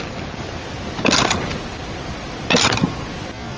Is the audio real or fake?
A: real